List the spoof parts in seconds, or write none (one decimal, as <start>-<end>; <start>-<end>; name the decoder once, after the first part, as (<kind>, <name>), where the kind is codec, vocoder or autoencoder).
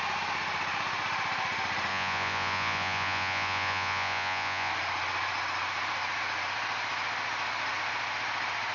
1.9-4.7 (vocoder, Vocos)